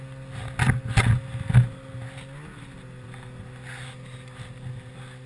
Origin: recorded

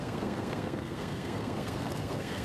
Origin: remade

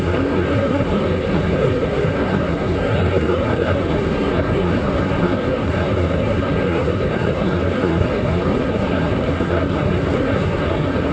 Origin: remade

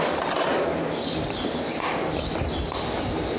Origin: recorded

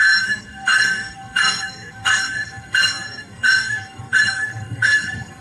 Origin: remade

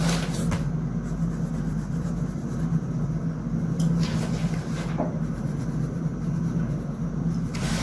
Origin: recorded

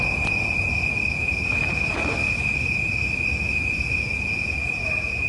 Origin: recorded